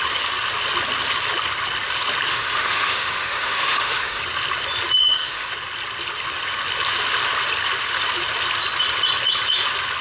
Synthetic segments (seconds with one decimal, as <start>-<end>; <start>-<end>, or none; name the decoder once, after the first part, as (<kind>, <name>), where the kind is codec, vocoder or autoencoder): 2.3-4.2 (autoencoder, DAC-VAE); 5.0-5.5